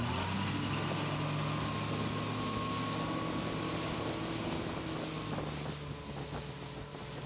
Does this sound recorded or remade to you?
recorded